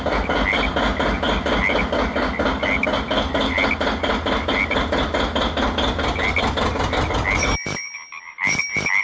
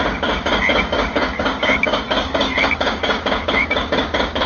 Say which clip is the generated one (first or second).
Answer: second